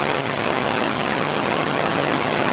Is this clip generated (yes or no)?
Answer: yes